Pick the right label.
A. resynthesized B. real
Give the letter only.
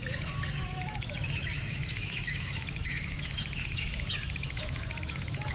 A